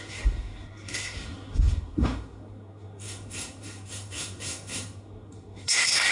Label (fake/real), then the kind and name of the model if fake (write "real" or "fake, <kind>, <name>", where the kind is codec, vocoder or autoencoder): fake, codec, SNAC